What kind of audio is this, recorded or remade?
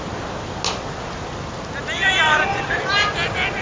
recorded